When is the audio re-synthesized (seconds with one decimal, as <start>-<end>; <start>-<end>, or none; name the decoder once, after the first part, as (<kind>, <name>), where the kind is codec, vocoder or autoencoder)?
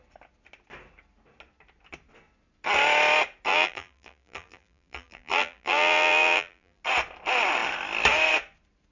3.5-6.8 (vocoder, BigVGAN v2)